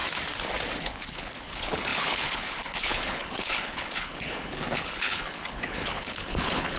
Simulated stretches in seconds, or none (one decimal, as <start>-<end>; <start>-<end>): 0.8-6.8